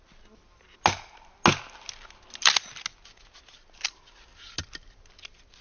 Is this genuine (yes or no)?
yes